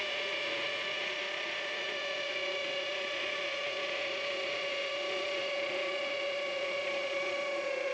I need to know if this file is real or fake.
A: fake